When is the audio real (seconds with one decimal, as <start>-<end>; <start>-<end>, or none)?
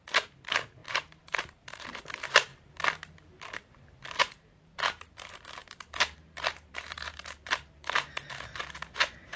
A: 2.5-4.2